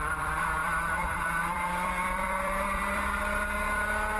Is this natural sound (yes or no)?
no